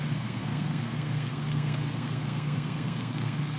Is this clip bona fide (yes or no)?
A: no